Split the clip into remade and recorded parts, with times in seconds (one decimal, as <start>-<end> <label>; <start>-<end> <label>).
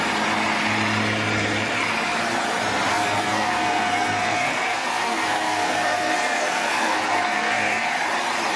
0.0-2.9 recorded; 2.9-7.9 remade; 7.9-8.6 recorded